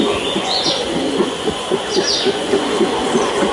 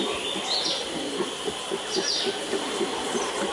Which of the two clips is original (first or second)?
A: second